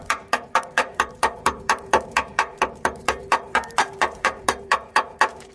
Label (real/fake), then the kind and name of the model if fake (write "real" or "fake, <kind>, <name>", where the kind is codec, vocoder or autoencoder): fake, vocoder, BigVGAN v2